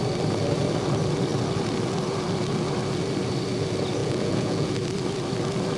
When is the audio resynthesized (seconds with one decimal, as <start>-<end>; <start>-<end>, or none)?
4.0-4.7